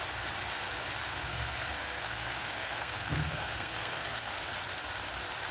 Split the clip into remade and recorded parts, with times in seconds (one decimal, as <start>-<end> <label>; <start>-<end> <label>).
0.0-1.0 recorded; 1.0-4.3 remade; 4.3-5.5 recorded